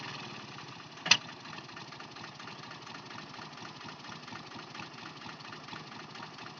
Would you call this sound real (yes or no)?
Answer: yes